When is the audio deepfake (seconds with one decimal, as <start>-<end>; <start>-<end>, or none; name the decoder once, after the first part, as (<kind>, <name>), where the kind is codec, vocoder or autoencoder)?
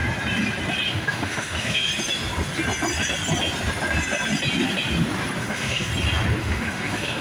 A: 0.9-1.9 (autoencoder, DAC-VAE); 5.4-5.9; 6.4-7.2